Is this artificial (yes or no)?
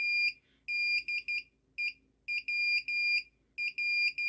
no